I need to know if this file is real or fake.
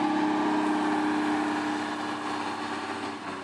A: real